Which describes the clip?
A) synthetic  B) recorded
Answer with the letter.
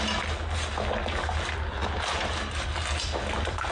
B